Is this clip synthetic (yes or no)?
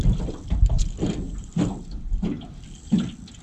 yes